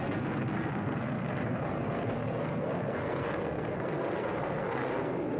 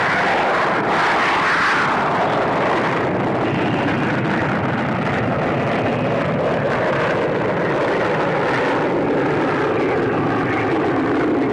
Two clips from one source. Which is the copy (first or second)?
first